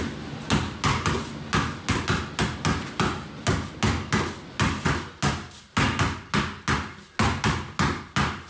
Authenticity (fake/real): real